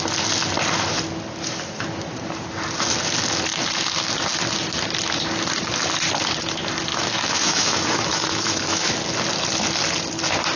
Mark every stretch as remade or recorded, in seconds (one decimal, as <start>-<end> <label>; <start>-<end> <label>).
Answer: 0.0-6.9 recorded; 6.9-8.9 remade; 8.9-10.6 recorded